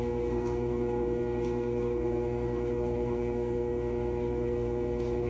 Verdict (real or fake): fake